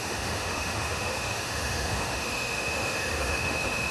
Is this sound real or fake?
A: fake